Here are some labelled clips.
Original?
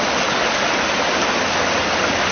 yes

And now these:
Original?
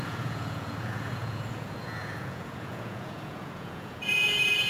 no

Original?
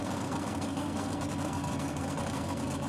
no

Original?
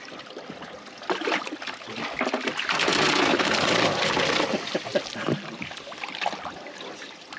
yes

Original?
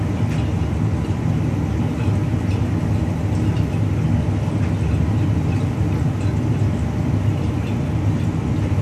yes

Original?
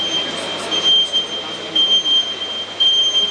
yes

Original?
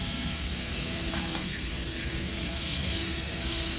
no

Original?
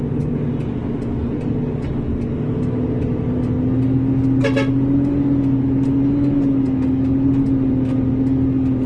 yes